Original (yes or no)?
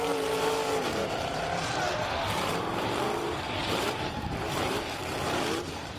no